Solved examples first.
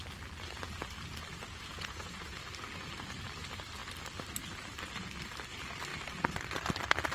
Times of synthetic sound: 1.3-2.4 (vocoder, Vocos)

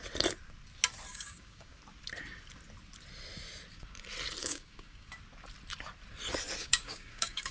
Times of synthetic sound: 1.1-1.8 (codec, DAC); 4.4-5.1; 6.6-7.5

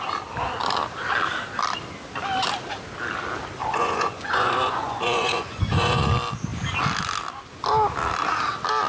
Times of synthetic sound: 3.6-6.1 (vocoder, Vocos)

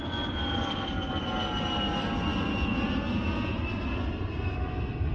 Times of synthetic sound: 2.3-3.6 (vocoder, Vocos)

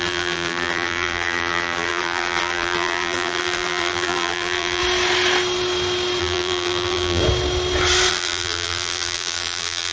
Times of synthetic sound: 0.0-4.8 (vocoder, BigVGAN v2); 6.2-7.2; 8.1-9.9

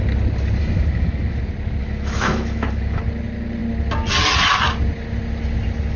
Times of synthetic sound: 0.6-1.4 (autoencoder, DAC-VAE); 1.8-3.0

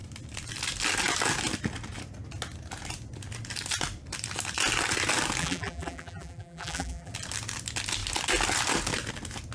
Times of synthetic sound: 5.4-7.1 (vocoder, BigVGAN v2)

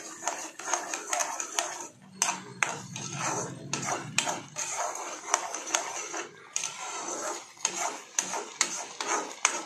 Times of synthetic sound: 1.2-1.7 (vocoder, BigVGAN v2); 2.5-7.4